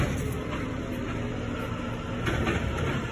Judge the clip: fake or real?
real